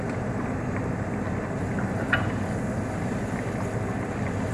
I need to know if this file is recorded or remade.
recorded